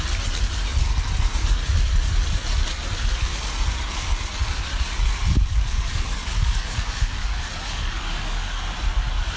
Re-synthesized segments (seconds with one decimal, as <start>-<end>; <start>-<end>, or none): 5.3-8.7